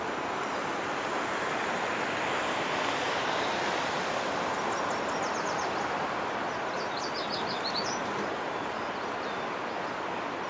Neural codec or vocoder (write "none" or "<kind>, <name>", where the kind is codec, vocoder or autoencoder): none